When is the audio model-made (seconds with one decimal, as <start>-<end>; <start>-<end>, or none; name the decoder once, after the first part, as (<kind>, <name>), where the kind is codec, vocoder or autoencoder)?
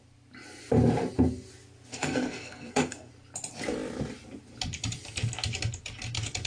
1.9-3.1 (codec, SNAC)